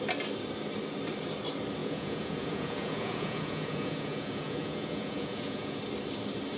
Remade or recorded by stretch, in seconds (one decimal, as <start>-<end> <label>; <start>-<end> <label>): 0.0-1.8 recorded; 1.8-5.8 remade; 5.8-6.6 recorded